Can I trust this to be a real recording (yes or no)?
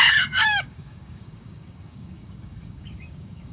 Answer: no